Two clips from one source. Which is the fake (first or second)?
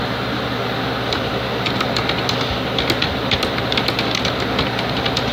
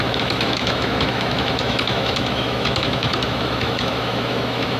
second